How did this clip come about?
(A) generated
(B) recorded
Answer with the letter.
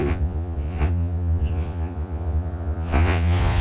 A